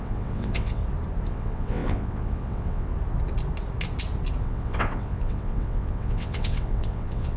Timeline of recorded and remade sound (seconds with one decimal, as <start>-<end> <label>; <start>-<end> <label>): 0.0-0.8 remade; 0.8-1.3 recorded; 1.3-2.9 remade; 2.9-4.4 recorded; 4.4-7.4 remade